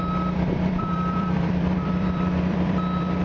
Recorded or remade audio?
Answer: remade